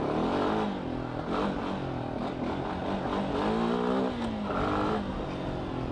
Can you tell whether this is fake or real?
real